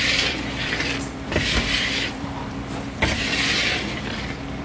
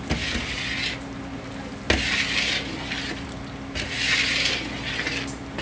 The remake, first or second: first